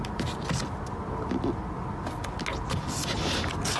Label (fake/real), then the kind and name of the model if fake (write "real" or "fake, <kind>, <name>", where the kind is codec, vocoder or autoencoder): real